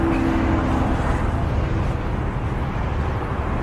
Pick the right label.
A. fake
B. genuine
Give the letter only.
B